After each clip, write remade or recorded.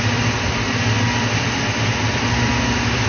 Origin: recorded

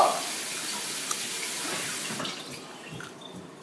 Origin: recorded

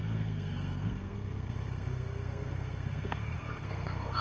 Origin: remade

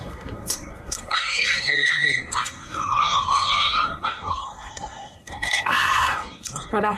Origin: remade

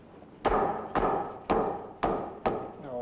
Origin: recorded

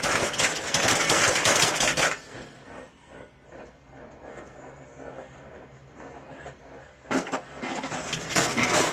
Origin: remade